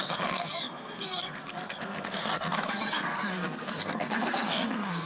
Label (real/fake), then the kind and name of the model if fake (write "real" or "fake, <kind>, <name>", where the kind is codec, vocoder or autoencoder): fake, codec, SNAC